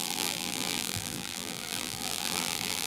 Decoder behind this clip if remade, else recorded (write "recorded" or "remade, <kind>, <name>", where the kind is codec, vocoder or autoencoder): remade, vocoder, BigVGAN v2